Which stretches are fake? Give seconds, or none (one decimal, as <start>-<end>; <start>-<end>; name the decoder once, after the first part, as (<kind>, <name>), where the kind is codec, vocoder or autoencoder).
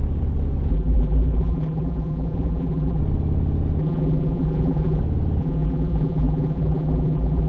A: 0.7-3.0 (vocoder, BigVGAN v2); 3.8-5.0; 5.4-7.5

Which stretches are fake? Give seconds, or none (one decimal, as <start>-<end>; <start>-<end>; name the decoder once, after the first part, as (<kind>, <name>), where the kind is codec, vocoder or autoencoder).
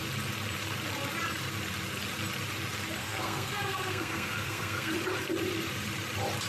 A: 3.0-4.9 (codec, SNAC)